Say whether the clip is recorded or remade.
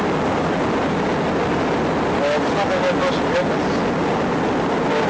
recorded